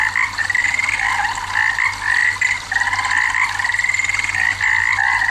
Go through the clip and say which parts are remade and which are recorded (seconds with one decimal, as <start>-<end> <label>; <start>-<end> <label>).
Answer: 0.0-5.3 recorded